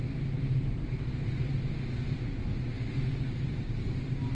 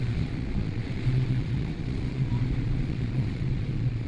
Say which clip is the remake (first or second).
second